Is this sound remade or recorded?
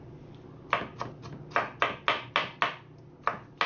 recorded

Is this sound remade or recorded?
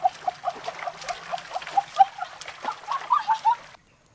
recorded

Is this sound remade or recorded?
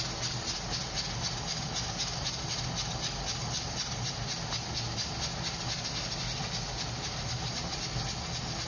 recorded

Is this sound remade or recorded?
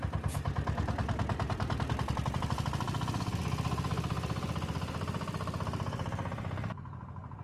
remade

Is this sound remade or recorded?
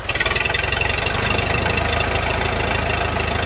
remade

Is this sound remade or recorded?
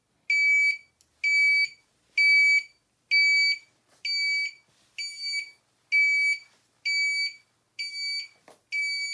recorded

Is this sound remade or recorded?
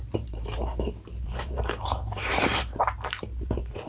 remade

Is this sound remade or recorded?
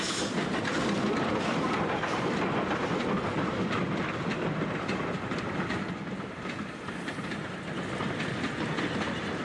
remade